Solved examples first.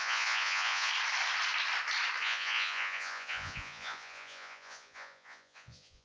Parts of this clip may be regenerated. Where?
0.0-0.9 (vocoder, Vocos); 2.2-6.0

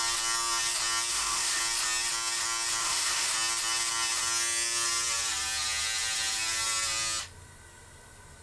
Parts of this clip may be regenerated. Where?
1.1-1.6 (autoencoder, DAC-VAE); 2.8-3.3

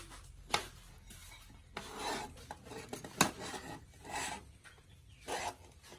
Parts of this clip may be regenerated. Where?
none

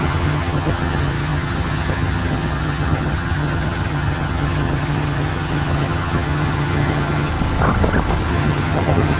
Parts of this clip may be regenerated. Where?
0.0-7.3 (vocoder, HiFi-GAN); 8.3-9.2

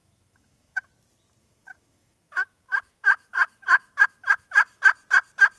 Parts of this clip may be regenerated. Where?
0.0-0.9 (autoencoder, DAC-VAE); 1.4-4.8

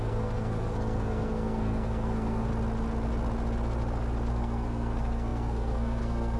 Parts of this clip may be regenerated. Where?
0.0-2.5 (codec, SNAC); 4.3-6.4